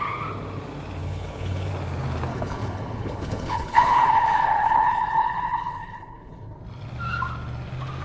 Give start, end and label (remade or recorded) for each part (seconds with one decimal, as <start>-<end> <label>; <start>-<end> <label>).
0.0-1.0 recorded; 1.0-1.7 remade; 1.7-2.3 recorded; 2.3-6.5 remade; 6.5-8.0 recorded